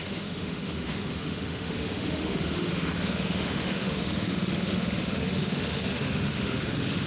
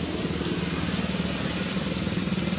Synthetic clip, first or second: first